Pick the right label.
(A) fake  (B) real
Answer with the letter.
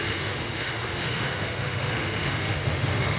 A